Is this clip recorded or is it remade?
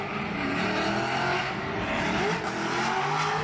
recorded